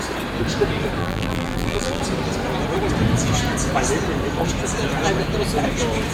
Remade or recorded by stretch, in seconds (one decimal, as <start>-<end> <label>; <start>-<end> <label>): 0.0-1.0 recorded; 1.0-2.0 remade; 2.0-6.1 recorded